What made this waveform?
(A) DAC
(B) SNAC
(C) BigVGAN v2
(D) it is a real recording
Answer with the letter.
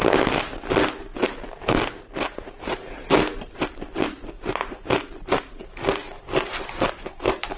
D